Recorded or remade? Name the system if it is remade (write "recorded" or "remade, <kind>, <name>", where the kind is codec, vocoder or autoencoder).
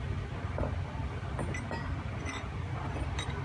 recorded